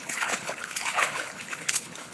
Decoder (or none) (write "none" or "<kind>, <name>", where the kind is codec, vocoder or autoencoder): codec, HILCodec